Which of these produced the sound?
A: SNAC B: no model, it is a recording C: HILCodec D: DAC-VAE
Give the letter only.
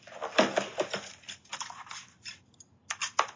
B